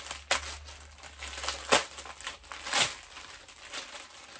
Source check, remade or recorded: recorded